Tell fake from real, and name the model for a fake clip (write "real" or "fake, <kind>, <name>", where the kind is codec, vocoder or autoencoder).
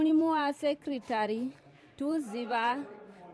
fake, vocoder, BigVGAN v2